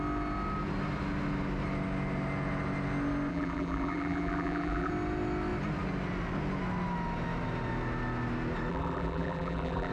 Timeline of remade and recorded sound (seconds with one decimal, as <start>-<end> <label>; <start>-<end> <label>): 0.0-3.3 recorded; 3.3-4.9 remade; 4.9-8.7 recorded; 8.7-9.9 remade